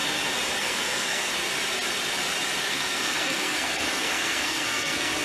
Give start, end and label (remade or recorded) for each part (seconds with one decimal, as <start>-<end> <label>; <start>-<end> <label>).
0.0-0.6 recorded; 0.6-1.3 remade; 1.3-2.7 recorded; 2.7-5.2 remade